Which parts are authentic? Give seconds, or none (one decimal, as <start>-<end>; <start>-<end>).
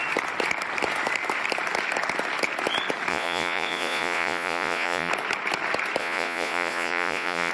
0.0-3.1; 5.1-6.0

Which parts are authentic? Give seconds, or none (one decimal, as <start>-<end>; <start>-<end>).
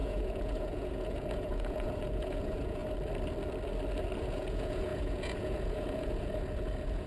2.8-4.2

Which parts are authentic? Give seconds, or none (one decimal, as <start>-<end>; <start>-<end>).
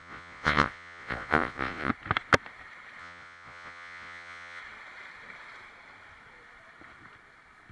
1.9-3.0; 4.6-7.7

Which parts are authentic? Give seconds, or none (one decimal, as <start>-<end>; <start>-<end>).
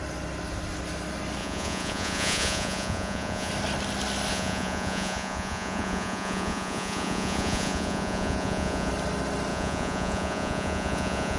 0.0-1.4; 3.5-4.3; 8.9-9.5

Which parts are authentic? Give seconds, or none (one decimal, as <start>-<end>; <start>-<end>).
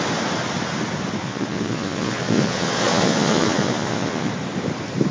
0.0-1.2; 4.3-5.1